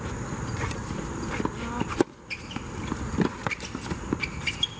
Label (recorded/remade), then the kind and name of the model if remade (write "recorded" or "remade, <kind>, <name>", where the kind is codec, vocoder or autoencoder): recorded